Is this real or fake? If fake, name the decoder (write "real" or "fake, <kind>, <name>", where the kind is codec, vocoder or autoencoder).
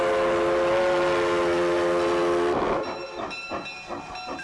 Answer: real